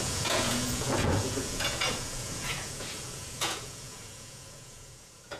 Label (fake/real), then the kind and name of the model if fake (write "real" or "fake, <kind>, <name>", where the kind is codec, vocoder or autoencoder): fake, vocoder, Vocos